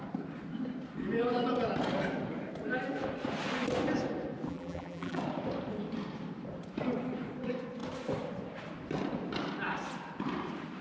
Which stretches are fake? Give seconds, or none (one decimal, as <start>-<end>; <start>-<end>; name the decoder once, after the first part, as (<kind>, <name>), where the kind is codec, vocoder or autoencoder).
4.5-5.2 (vocoder, BigVGAN v2)